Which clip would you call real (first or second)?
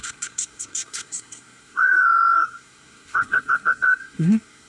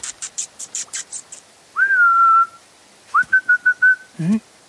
second